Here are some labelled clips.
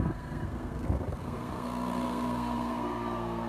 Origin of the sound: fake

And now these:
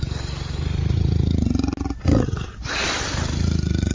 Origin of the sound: real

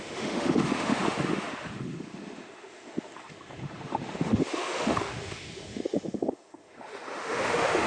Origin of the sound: fake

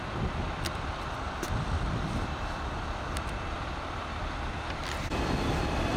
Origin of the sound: real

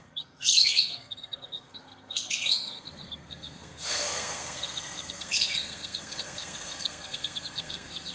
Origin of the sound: fake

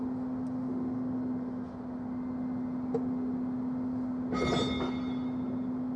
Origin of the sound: real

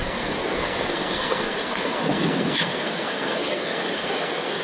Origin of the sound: fake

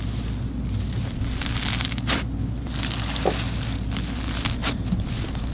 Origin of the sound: real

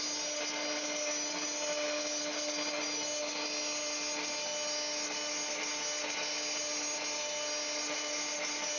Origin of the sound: real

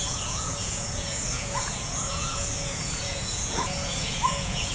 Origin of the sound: fake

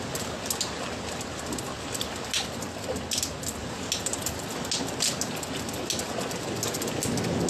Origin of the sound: real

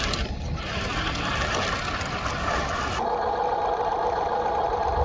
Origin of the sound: real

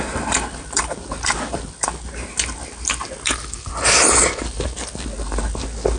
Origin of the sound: real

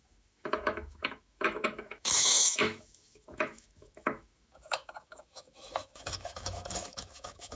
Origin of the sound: fake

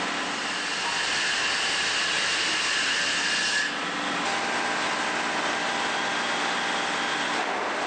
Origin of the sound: real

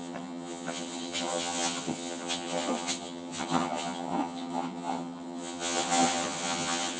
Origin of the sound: fake